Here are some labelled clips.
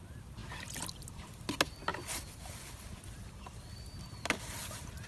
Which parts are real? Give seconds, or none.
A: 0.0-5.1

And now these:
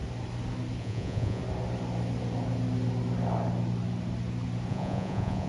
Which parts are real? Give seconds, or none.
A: 0.0-0.8; 1.4-4.7

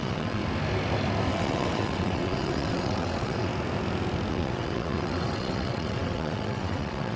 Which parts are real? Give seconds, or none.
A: 0.4-1.3; 3.5-4.3

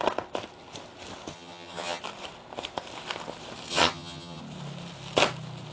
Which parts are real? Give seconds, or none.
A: 0.0-1.3; 2.0-3.7; 4.4-5.7

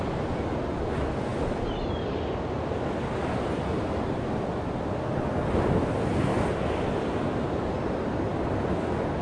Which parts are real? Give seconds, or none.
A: 0.0-1.3; 2.1-9.2